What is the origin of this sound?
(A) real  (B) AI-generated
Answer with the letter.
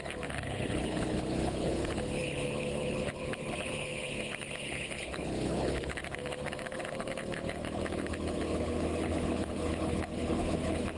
B